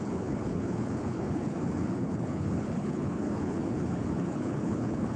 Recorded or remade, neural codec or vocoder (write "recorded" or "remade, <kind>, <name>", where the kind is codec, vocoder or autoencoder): remade, codec, HILCodec